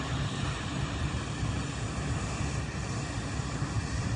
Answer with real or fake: fake